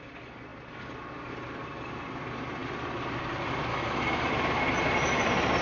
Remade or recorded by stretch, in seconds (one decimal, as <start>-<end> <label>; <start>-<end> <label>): 0.0-3.7 recorded; 3.7-4.3 remade; 4.3-5.6 recorded